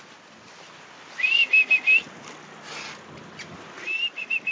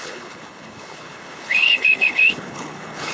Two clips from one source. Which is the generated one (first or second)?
second